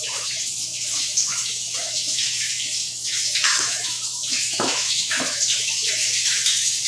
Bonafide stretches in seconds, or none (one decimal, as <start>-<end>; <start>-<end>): none